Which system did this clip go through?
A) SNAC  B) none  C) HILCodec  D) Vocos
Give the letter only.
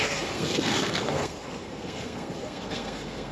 A